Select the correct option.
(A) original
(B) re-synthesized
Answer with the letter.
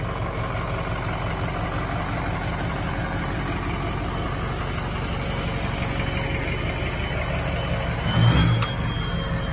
A